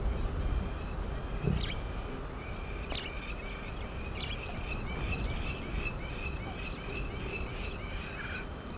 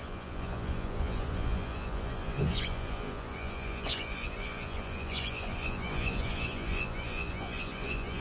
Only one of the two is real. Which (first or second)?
first